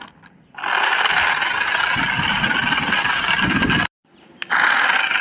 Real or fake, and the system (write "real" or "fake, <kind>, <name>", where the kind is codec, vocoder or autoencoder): real